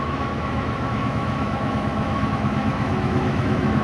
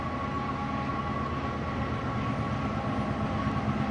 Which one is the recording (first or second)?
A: second